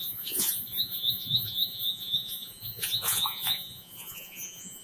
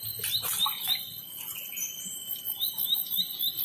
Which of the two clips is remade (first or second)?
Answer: first